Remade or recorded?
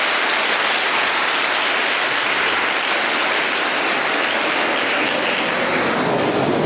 recorded